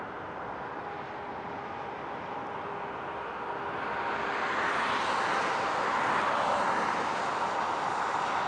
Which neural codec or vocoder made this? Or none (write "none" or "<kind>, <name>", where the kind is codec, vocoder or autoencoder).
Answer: none